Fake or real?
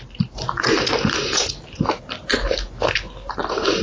real